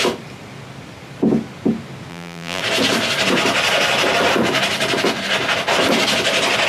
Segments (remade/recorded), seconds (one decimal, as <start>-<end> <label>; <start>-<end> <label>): 0.0-2.1 recorded; 2.1-2.6 remade; 2.6-6.7 recorded